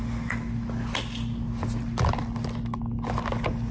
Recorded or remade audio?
recorded